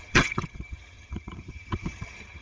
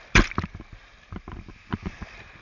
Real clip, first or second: second